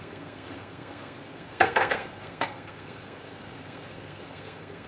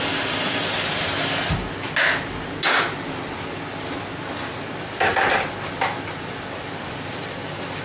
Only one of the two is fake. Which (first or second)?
first